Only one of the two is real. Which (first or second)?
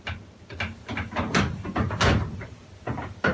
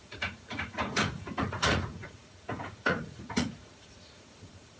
first